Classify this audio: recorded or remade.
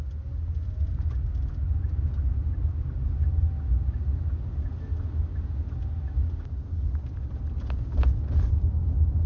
recorded